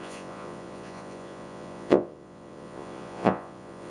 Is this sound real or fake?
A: fake